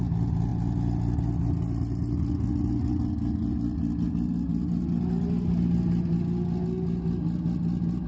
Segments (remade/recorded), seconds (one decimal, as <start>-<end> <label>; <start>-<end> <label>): 0.0-8.1 recorded